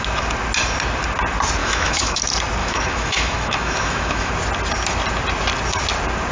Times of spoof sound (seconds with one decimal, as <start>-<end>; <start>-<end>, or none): 1.6-2.2; 2.6-4.3

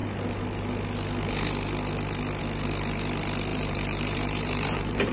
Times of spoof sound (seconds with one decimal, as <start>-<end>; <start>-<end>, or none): 3.5-5.1

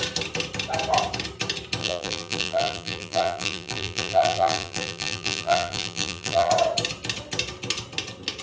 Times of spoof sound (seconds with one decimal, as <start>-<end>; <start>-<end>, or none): 1.8-6.5

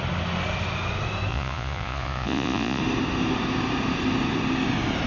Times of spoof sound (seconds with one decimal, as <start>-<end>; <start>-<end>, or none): 1.3-2.8

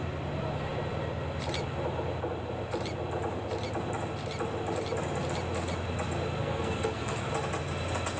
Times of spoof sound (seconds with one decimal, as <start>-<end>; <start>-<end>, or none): 6.4-7.3